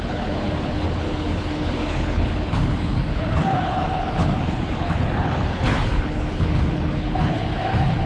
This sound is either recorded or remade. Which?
remade